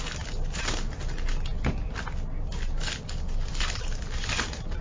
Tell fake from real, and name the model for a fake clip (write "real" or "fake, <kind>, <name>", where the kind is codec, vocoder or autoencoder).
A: real